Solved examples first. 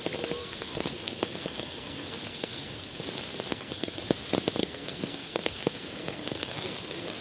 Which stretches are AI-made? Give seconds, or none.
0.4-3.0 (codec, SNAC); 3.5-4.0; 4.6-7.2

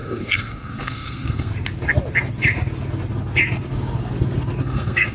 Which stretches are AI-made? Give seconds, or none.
0.0-1.5 (codec, SNAC); 4.6-5.1